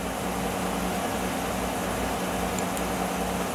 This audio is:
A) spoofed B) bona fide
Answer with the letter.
B